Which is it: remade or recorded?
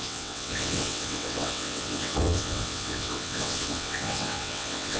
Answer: remade